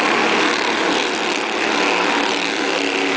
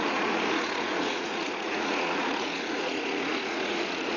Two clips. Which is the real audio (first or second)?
first